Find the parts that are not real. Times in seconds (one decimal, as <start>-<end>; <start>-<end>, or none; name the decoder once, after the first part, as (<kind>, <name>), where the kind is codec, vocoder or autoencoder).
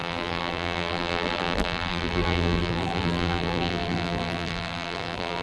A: 0.0-5.4 (vocoder, BigVGAN v2)